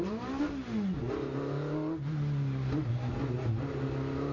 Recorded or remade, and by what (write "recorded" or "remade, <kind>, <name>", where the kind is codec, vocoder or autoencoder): recorded